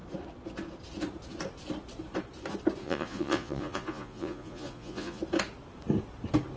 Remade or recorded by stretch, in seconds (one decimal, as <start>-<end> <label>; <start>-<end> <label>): 0.0-2.8 recorded; 2.8-5.2 remade; 5.2-6.6 recorded